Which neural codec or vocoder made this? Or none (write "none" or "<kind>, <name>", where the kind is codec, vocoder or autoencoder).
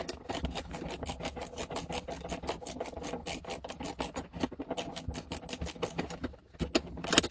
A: none